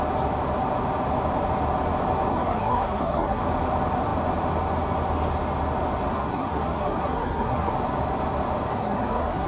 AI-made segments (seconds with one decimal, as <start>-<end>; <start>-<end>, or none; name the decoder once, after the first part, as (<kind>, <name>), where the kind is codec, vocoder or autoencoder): 2.3-3.4 (codec, SNAC); 6.1-7.7; 8.7-9.5